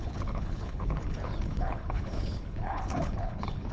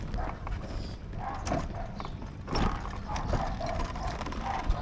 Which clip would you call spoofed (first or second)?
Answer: first